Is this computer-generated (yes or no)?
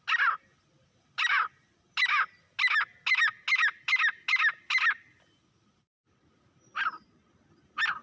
no